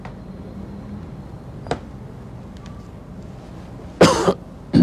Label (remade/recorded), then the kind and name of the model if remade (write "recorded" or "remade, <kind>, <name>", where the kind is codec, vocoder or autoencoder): recorded